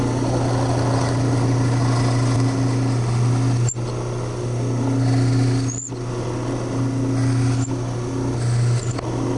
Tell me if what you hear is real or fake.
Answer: real